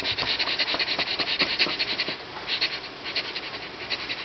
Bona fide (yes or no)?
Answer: no